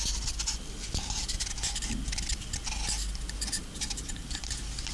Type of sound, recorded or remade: recorded